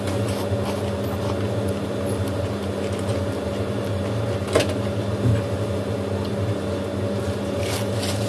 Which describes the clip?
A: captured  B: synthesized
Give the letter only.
A